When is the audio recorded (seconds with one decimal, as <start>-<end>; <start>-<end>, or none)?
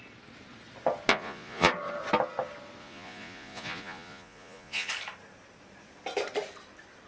0.0-1.1; 1.7-2.8; 4.9-7.1